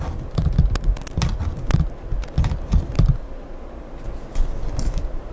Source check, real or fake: real